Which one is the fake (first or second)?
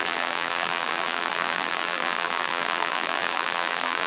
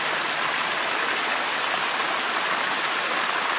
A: first